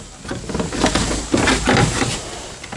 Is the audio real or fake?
real